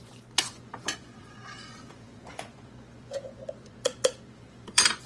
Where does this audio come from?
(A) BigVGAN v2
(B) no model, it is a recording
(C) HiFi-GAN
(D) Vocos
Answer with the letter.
D